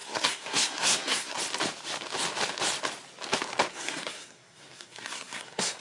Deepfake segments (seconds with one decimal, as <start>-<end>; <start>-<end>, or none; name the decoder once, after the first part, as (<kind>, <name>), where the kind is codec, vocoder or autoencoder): 0.0-1.4 (codec, SNAC); 3.7-5.8